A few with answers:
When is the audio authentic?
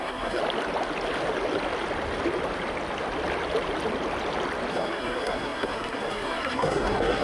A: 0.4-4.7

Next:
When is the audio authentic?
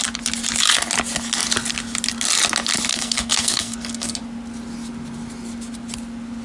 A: 0.0-2.9; 4.2-6.4